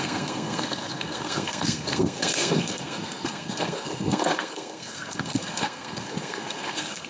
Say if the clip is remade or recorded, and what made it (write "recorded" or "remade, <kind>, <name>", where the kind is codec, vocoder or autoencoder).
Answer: remade, codec, SNAC